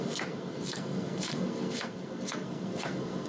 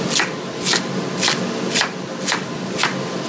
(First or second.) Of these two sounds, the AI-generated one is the first